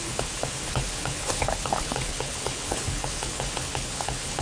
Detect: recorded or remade remade